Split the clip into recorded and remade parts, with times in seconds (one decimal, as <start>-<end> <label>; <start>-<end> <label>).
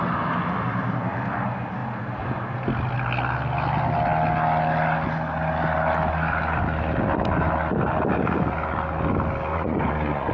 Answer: 0.0-9.5 recorded; 9.5-10.3 remade